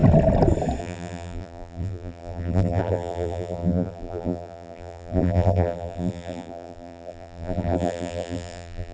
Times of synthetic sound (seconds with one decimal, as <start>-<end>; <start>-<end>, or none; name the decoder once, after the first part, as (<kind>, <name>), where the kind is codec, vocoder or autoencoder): 0.8-8.9 (vocoder, BigVGAN v2)